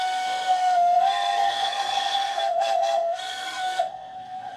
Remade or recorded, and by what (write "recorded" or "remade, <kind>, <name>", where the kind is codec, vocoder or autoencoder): remade, codec, SNAC